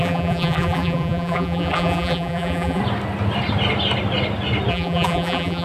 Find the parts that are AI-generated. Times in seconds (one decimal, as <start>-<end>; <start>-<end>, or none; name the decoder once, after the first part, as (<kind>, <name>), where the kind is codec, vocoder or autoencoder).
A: 0.0-2.8 (vocoder, BigVGAN v2); 4.7-5.6